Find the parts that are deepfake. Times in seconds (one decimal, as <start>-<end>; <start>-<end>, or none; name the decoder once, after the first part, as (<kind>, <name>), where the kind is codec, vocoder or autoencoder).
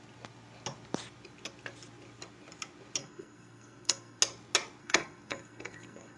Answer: 3.0-4.2 (codec, SNAC); 4.8-6.2